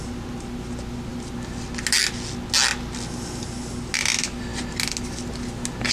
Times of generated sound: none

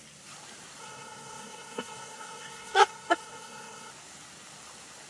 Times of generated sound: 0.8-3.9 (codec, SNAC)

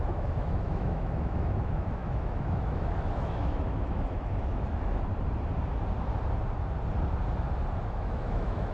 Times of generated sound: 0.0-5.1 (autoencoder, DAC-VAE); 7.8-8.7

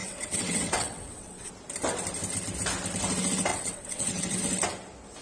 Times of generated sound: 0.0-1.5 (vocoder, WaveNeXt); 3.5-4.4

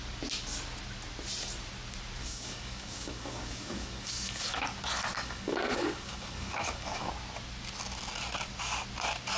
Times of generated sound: 2.2-4.6 (codec, DAC); 5.1-7.1

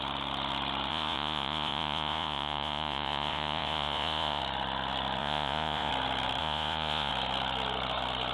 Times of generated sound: 0.9-4.4 (vocoder, Vocos); 5.2-5.9; 6.4-7.1